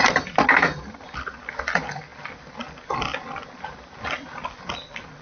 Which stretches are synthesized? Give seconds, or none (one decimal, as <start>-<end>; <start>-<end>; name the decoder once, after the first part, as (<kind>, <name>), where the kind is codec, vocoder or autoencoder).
none